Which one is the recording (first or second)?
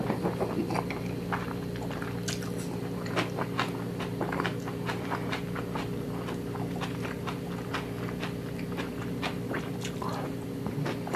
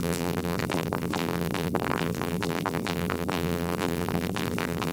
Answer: first